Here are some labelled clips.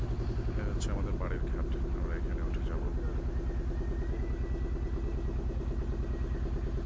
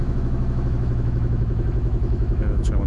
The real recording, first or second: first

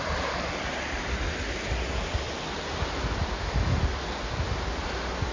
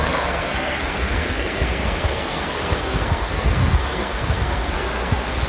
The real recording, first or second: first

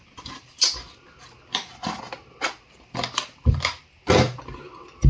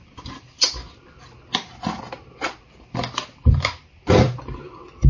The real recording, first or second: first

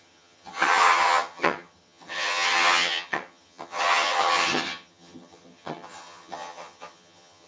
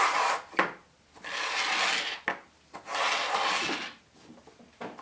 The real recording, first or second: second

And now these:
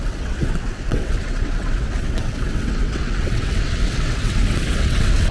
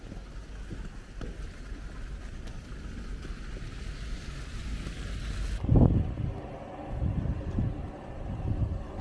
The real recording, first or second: second